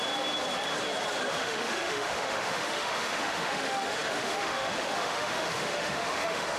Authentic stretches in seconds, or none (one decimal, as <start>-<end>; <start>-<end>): 0.0-1.4